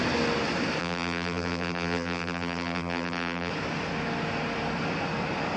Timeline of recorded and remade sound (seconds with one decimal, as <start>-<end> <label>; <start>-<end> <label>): 0.0-0.8 recorded; 0.8-3.5 remade; 3.5-5.6 recorded